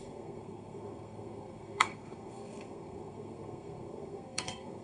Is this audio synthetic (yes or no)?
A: yes